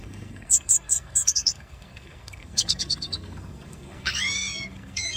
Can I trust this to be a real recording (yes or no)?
no